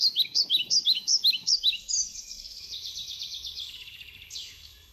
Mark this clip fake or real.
fake